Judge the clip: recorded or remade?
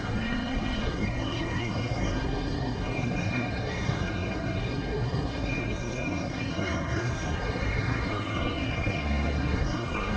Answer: remade